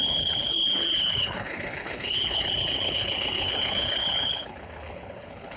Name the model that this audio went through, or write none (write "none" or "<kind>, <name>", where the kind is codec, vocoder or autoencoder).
codec, HILCodec